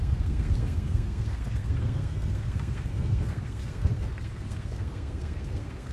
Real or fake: fake